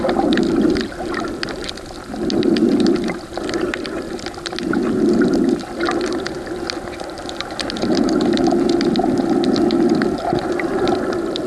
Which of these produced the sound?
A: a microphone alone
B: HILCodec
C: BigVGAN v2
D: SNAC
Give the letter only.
A